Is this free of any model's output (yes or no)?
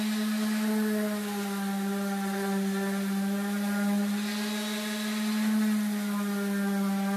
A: yes